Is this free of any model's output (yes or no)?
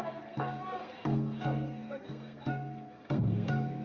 no